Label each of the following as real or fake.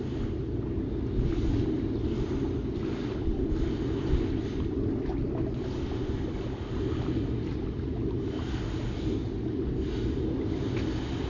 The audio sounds real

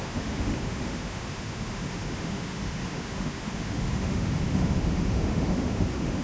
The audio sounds fake